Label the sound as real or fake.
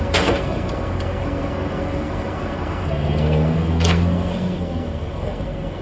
fake